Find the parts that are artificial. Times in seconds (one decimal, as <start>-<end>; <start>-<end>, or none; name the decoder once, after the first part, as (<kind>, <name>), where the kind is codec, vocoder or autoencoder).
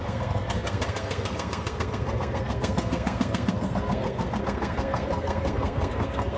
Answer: 0.0-6.4 (codec, SNAC)